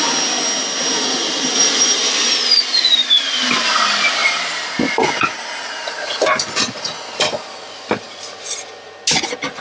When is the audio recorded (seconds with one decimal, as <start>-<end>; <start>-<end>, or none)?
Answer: 0.0-4.2; 8.1-9.6